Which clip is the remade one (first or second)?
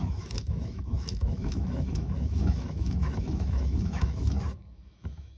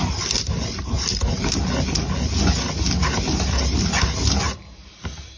first